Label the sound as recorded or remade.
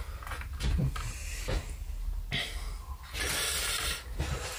recorded